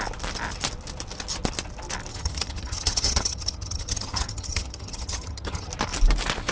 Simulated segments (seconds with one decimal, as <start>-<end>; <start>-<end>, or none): 2.1-5.7